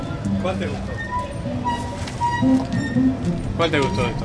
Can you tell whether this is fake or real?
real